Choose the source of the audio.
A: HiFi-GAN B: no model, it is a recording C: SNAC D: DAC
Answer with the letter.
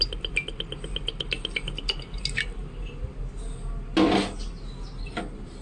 B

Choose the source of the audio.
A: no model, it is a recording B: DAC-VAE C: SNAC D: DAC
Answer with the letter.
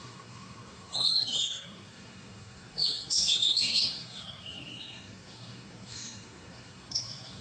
C